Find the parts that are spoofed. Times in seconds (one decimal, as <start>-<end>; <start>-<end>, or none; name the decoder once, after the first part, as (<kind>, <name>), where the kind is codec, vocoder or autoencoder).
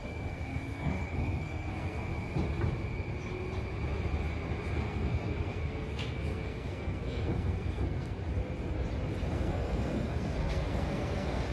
0.0-2.1 (codec, SNAC); 4.7-8.2; 9.3-11.5